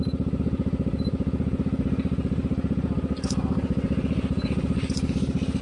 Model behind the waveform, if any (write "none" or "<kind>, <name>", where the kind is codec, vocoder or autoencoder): none